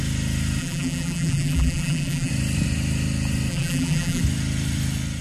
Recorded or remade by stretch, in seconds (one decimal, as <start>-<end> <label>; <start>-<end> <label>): 0.0-0.6 recorded; 0.6-2.3 remade; 2.3-3.5 recorded; 3.5-4.2 remade; 4.2-5.2 recorded

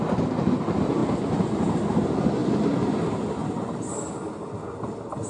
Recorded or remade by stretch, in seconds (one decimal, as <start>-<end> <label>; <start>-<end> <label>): 0.0-5.3 recorded